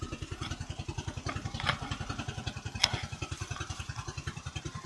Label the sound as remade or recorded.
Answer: remade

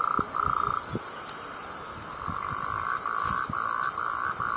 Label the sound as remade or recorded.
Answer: recorded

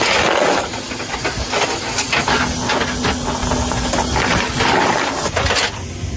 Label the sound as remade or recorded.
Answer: recorded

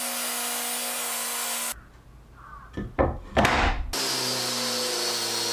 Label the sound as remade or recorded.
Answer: recorded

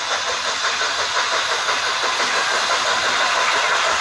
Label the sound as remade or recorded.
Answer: recorded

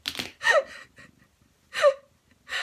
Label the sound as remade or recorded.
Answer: recorded